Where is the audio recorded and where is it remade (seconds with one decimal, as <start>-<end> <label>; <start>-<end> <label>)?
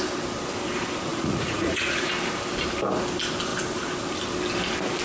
0.0-1.1 recorded; 1.1-2.1 remade; 2.1-5.0 recorded